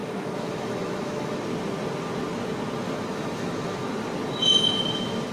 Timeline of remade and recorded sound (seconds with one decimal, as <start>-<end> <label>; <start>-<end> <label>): 0.0-1.4 remade; 1.4-3.1 recorded; 3.1-3.9 remade; 3.9-5.3 recorded

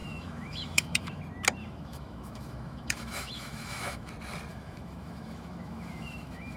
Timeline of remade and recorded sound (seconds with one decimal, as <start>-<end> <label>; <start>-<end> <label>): 0.0-1.2 remade; 1.2-1.6 recorded; 1.6-4.1 remade; 4.1-4.5 recorded; 4.5-6.6 remade